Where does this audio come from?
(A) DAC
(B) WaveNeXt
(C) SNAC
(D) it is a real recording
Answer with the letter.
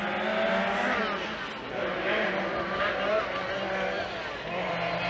D